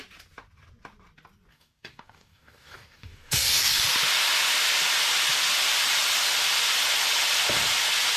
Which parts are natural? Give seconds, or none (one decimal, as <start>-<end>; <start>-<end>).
0.0-1.5; 3.8-8.2